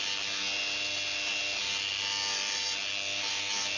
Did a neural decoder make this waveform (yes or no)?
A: no